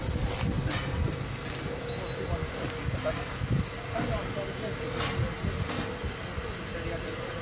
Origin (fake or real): real